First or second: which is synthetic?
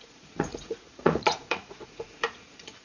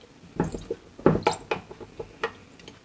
first